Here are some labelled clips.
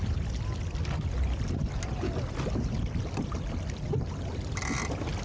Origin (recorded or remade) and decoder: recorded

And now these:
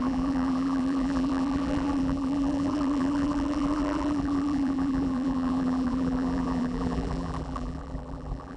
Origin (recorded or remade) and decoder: remade, vocoder, BigVGAN v2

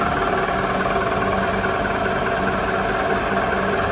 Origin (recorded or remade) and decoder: recorded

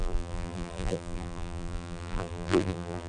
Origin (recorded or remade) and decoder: remade, vocoder, BigVGAN v2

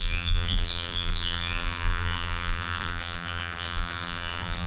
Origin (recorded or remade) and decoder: remade, vocoder, BigVGAN v2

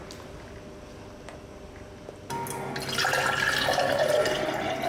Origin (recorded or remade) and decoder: recorded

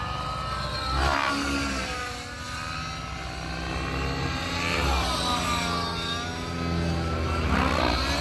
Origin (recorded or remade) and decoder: recorded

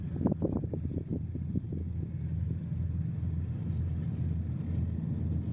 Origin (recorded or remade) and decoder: recorded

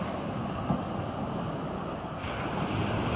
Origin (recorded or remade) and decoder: remade, vocoder, BigVGAN v2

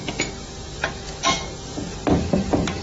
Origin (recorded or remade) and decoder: recorded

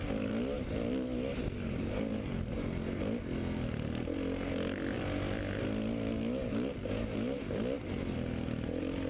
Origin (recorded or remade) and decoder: recorded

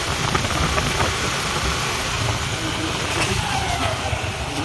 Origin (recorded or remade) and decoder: remade, vocoder, BigVGAN v2